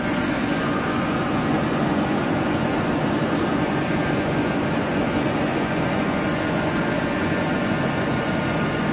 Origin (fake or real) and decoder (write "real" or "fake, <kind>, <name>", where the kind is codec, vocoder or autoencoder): fake, vocoder, Vocos